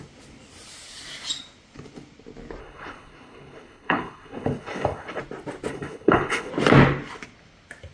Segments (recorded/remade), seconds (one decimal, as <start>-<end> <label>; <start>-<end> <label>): 0.0-2.6 recorded; 2.6-5.2 remade; 5.2-5.7 recorded; 5.7-6.5 remade; 6.5-7.9 recorded